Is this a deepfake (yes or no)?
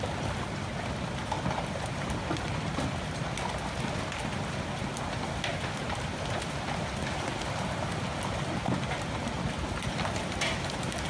no